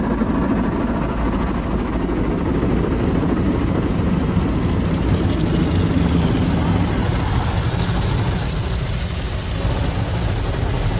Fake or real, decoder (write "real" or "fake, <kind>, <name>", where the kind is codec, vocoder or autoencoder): real